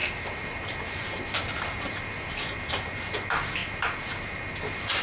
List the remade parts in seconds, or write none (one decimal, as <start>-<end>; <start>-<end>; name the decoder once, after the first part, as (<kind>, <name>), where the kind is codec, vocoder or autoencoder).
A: none